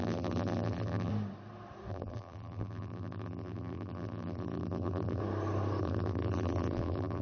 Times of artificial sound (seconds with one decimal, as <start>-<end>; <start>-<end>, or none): 0.0-1.1; 1.9-5.2; 5.8-7.2